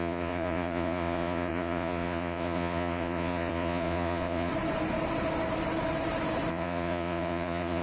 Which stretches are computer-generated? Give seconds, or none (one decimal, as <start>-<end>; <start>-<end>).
0.0-4.5; 6.5-7.8

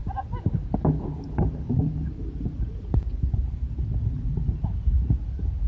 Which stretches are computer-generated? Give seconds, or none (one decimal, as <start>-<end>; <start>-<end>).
none

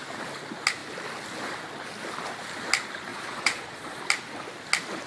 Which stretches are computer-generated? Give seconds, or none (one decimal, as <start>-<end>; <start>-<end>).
3.1-4.0

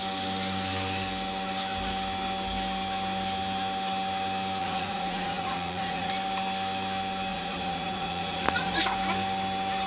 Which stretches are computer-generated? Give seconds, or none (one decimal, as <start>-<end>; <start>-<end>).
4.6-6.1; 7.3-8.8

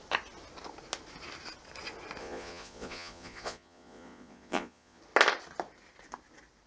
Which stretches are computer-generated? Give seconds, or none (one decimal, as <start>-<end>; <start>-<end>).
2.2-5.0

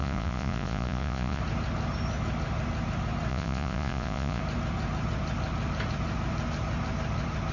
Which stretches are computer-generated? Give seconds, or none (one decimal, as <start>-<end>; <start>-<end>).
0.0-1.4; 3.3-4.4

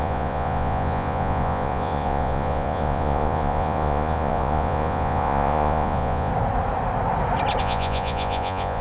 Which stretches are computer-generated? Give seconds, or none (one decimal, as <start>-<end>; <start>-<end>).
0.0-6.3; 7.6-8.8